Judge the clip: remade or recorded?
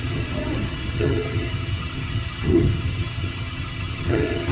remade